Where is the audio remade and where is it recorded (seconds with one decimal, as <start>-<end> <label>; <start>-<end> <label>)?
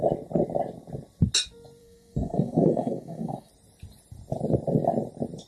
0.0-1.8 recorded; 1.8-3.5 remade; 3.5-5.5 recorded